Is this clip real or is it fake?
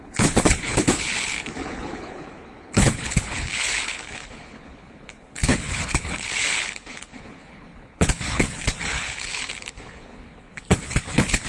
fake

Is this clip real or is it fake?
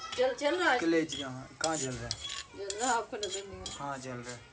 real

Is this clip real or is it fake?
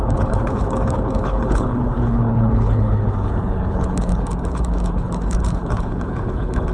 fake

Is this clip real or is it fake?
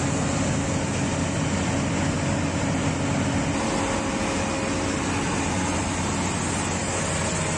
real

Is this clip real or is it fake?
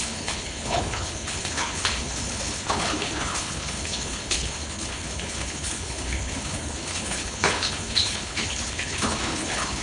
fake